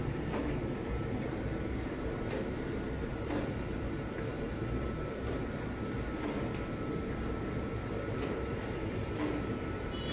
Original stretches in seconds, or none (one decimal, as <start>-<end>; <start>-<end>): none